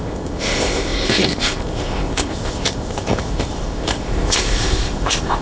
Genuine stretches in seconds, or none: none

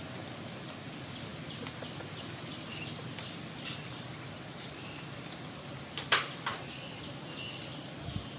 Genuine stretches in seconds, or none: 0.0-6.5; 7.1-8.4

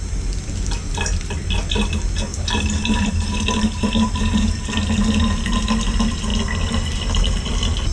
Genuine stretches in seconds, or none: 0.0-2.3; 4.6-7.9

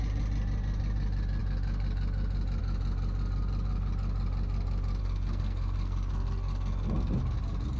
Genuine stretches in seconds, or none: 0.0-5.0; 7.2-7.8